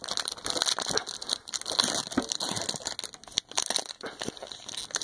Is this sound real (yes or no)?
yes